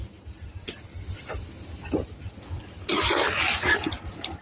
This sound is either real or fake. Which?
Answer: real